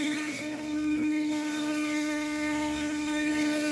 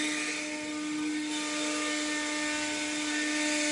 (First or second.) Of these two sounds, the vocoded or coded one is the first